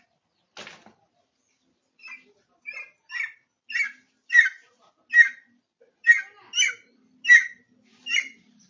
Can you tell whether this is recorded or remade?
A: recorded